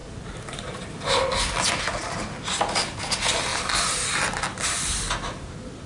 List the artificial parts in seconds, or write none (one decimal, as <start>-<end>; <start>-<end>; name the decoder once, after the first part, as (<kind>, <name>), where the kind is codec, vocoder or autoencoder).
none